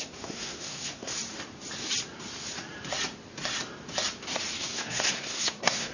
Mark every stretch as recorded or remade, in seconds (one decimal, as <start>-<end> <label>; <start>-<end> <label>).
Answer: 0.0-1.1 remade; 1.1-4.6 recorded; 4.6-5.9 remade

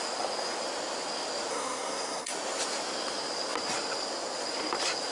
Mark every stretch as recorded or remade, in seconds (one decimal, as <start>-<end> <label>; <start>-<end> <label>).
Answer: 0.0-1.5 recorded; 1.5-2.3 remade; 2.3-5.1 recorded